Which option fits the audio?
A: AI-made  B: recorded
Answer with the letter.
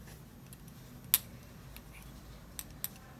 B